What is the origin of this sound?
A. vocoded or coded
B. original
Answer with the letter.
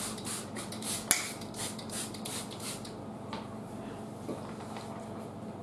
B